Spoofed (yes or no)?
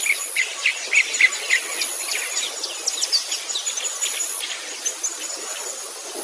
no